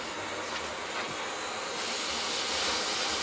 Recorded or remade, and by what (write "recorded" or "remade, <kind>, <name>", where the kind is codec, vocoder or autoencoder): recorded